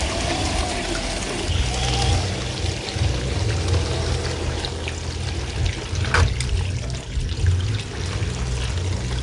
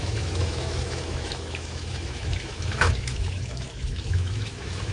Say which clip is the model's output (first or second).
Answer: second